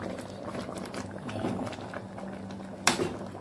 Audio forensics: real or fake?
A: real